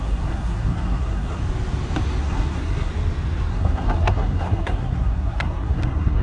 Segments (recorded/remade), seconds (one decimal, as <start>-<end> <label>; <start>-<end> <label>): 0.0-1.4 remade; 1.4-2.2 recorded; 2.2-2.9 remade; 2.9-3.5 recorded; 3.5-6.2 remade